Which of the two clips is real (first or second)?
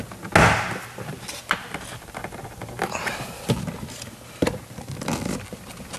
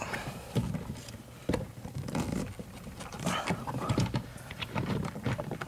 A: first